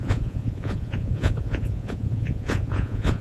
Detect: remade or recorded remade